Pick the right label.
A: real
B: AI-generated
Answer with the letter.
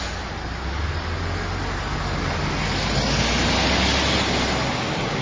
A